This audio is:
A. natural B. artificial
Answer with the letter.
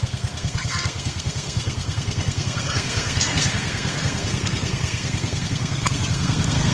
B